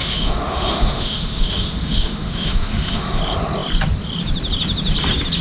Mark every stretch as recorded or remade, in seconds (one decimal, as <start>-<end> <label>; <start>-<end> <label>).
0.0-3.2 remade; 3.2-5.4 recorded